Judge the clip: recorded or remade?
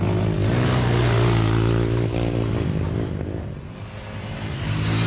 recorded